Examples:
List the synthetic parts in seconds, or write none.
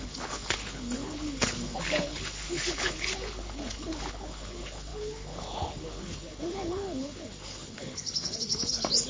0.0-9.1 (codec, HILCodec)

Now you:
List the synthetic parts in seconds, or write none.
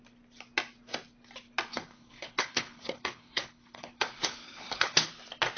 1.7-5.1 (codec, HILCodec)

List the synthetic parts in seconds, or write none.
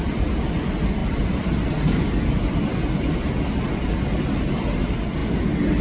none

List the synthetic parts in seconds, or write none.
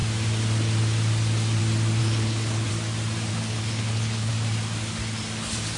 2.0-2.7 (codec, HILCodec); 3.3-4.3